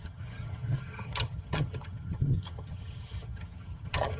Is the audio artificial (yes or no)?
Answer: yes